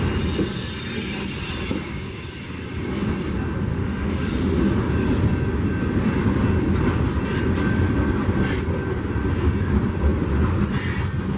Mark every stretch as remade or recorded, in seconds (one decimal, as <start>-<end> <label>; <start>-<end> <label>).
0.0-3.7 recorded; 3.7-4.6 remade; 4.6-11.4 recorded